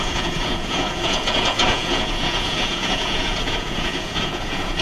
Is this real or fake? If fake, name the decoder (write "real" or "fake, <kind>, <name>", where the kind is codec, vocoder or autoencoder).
fake, vocoder, Vocos